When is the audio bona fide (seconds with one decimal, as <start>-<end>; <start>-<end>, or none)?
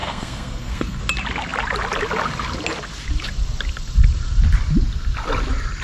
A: 1.0-5.8